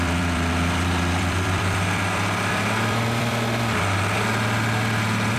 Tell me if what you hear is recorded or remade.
remade